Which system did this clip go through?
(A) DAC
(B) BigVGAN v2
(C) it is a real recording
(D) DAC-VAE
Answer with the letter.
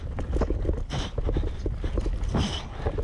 C